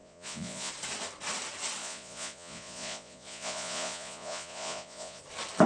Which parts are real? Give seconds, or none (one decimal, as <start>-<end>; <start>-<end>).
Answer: 0.7-1.8; 5.2-5.7